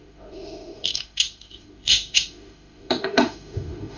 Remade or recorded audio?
remade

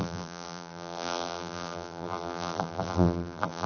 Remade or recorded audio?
remade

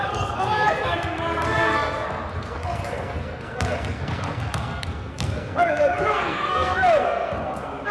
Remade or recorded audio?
remade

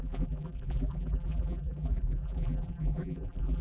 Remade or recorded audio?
remade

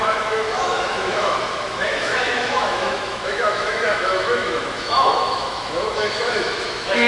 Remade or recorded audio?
remade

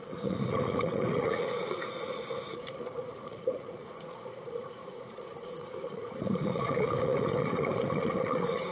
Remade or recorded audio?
remade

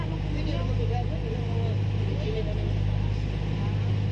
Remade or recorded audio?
recorded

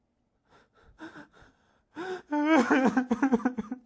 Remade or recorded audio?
recorded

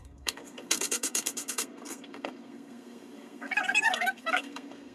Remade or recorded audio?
remade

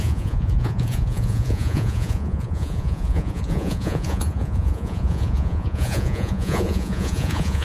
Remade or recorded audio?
remade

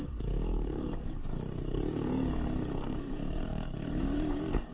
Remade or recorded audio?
remade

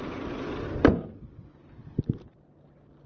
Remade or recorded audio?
recorded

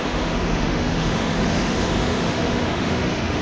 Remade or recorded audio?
remade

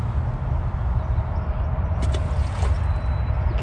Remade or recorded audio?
recorded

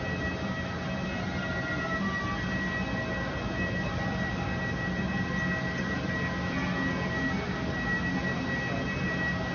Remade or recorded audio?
recorded